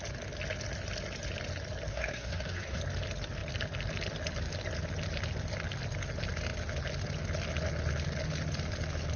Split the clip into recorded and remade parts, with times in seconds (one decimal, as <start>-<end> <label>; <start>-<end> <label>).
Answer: 0.0-1.9 recorded; 1.9-2.8 remade; 2.8-9.2 recorded